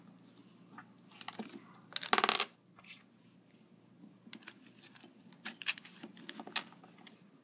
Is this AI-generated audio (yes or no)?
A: no